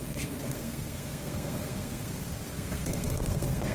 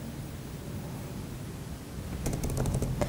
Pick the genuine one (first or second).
second